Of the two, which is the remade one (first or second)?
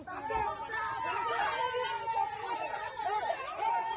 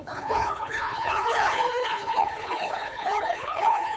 second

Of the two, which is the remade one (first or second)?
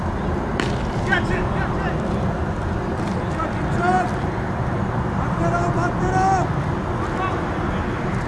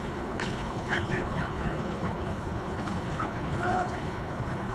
second